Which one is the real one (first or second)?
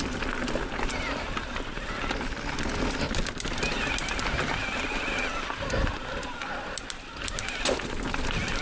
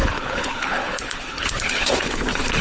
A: first